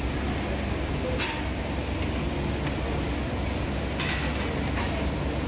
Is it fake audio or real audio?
real